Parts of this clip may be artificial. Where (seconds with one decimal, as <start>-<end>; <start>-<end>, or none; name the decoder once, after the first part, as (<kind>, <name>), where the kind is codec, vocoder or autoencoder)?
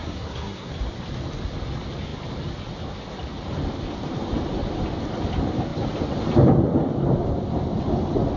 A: 0.0-0.7 (codec, SNAC)